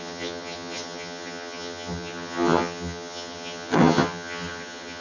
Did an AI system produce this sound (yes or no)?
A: yes